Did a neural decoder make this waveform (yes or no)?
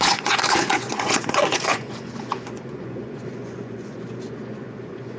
yes